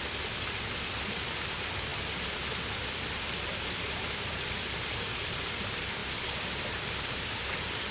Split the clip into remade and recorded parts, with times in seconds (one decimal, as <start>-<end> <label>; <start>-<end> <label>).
0.0-1.9 remade; 1.9-3.2 recorded; 3.2-6.0 remade; 6.0-6.8 recorded; 6.8-7.9 remade